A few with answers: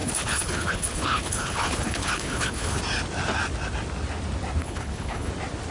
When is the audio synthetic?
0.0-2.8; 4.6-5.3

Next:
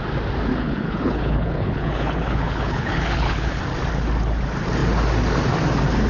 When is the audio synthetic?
0.5-3.6

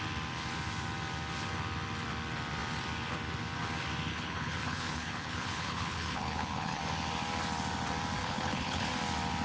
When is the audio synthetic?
4.1-6.8; 8.2-8.9

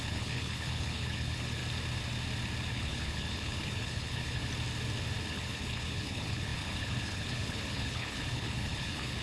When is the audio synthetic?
0.0-1.6; 2.7-4.4; 5.3-9.2

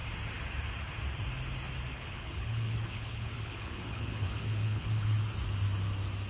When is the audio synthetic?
1.9-5.2

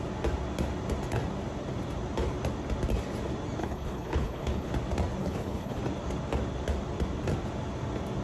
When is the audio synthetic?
3.6-4.7; 5.2-5.8

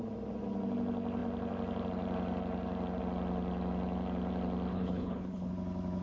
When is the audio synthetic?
4.7-5.5

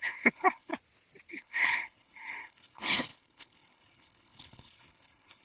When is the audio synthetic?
0.0-0.7; 1.3-5.4